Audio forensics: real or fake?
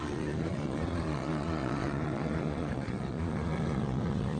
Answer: fake